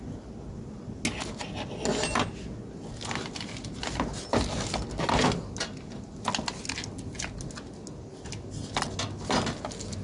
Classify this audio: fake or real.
real